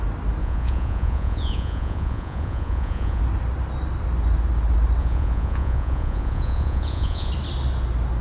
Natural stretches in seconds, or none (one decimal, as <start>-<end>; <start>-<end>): 0.0-0.4; 3.2-5.0; 7.3-8.2